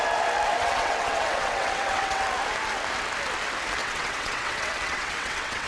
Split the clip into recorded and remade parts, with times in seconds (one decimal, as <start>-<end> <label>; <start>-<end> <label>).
0.0-0.6 recorded; 0.6-2.2 remade; 2.2-3.8 recorded; 3.8-5.7 remade